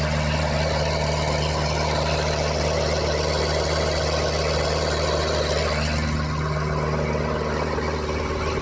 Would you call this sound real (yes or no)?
yes